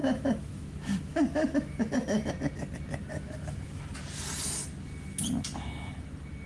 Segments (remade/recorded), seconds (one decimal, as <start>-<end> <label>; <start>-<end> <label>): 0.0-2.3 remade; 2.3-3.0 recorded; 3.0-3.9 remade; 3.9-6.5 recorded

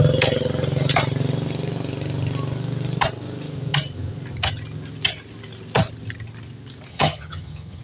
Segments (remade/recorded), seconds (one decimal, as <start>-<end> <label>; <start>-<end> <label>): 0.0-6.9 recorded; 6.9-7.8 remade

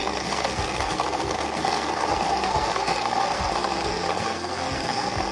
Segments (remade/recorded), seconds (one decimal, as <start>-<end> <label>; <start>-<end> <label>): 0.0-5.3 remade

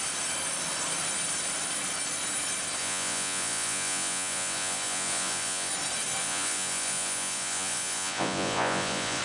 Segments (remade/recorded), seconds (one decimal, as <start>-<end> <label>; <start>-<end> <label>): 0.0-2.8 recorded; 2.8-5.7 remade; 5.7-6.2 recorded; 6.2-9.2 remade

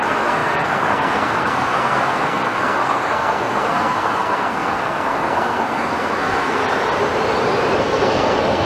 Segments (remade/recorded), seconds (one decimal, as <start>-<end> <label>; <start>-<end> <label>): 0.0-6.6 remade; 6.6-7.8 recorded; 7.8-8.7 remade

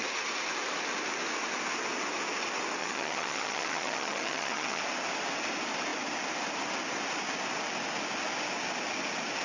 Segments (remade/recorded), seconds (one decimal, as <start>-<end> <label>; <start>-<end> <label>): 0.0-2.8 recorded; 2.8-4.8 remade; 4.8-9.4 recorded

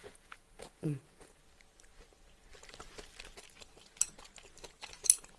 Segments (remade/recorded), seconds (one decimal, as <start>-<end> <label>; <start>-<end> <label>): 0.0-1.4 remade; 1.4-5.4 recorded